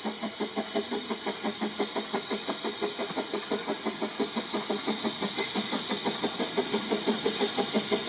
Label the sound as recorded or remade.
recorded